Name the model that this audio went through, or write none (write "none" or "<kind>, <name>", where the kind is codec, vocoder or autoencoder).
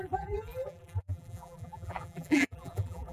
vocoder, BigVGAN v2